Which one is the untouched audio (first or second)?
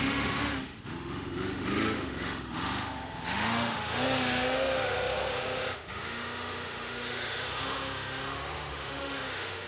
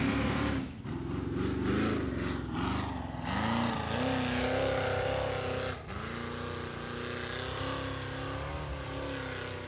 second